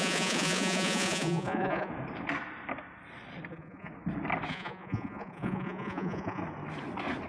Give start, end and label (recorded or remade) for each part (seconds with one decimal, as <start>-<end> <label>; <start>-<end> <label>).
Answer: 0.0-1.9 remade; 1.9-3.5 recorded; 3.5-3.9 remade; 3.9-4.5 recorded; 4.5-6.4 remade; 6.4-7.3 recorded